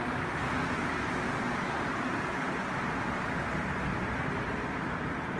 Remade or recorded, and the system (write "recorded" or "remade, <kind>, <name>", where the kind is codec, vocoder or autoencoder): recorded